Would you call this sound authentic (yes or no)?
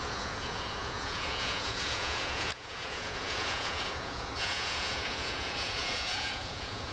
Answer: no